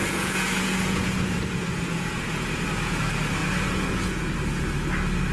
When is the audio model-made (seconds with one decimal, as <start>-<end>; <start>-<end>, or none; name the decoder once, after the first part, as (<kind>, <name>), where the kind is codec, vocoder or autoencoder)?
0.0-3.0 (vocoder, Vocos); 3.4-4.3